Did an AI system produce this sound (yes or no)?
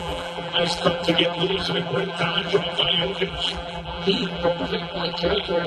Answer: yes